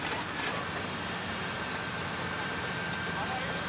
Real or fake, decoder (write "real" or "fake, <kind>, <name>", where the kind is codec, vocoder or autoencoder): real